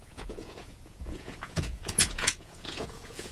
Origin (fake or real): fake